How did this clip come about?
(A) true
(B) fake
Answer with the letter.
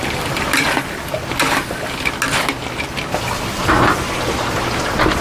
A